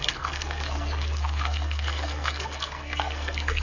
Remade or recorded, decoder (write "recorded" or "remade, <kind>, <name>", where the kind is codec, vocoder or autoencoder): remade, codec, SNAC